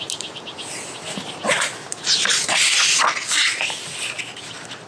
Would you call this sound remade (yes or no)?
no